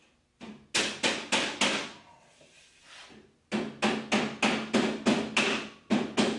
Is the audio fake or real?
real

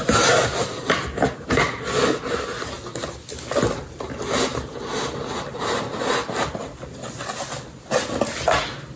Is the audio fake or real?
real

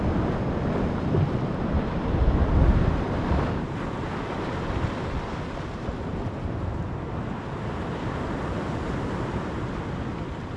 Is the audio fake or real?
real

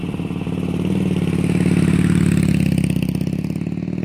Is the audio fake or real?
real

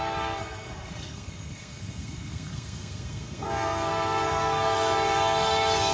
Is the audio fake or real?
fake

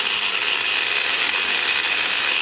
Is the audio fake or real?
real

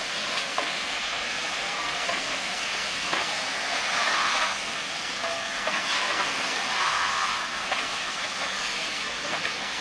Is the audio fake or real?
fake